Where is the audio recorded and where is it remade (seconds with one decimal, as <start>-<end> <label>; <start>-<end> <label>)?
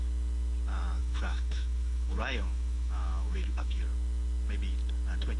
0.0-1.0 recorded; 1.0-3.8 remade; 3.8-5.4 recorded